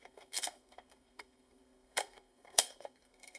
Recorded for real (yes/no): no